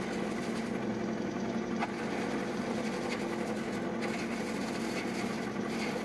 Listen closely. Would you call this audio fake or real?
real